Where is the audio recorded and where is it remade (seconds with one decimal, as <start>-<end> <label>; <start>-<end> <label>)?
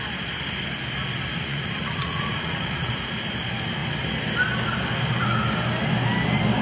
0.0-1.3 recorded; 1.3-2.9 remade; 2.9-6.6 recorded